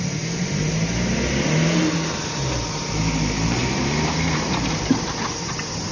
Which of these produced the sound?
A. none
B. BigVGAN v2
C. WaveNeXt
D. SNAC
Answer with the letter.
A